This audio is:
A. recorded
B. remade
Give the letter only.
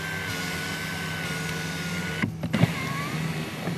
A